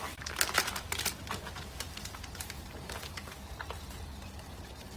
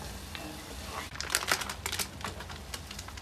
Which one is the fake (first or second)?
first